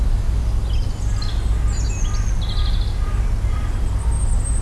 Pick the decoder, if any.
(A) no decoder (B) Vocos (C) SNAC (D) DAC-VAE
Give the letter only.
A